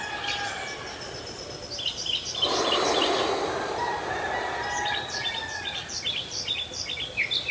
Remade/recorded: recorded